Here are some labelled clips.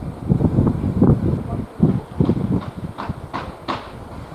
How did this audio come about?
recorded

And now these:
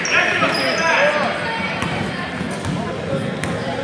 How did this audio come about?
recorded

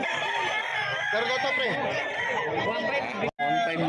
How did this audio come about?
recorded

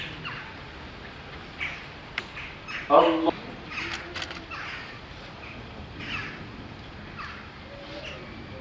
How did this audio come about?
recorded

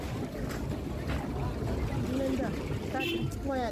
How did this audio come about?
recorded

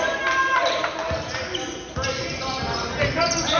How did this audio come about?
recorded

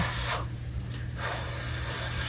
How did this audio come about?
recorded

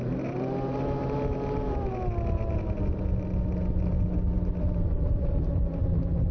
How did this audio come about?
recorded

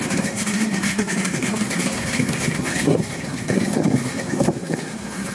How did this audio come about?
remade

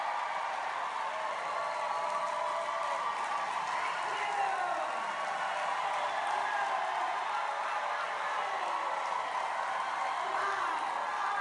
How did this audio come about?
recorded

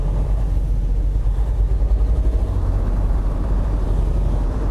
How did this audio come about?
remade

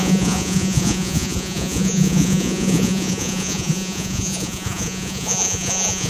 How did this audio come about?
remade